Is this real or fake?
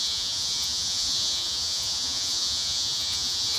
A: fake